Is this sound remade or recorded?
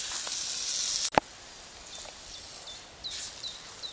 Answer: recorded